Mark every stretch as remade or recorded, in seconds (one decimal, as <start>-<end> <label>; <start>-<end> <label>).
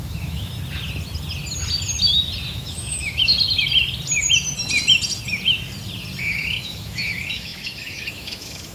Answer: 0.0-0.5 remade; 0.5-2.5 recorded; 2.5-3.3 remade; 3.3-6.2 recorded; 6.2-8.7 remade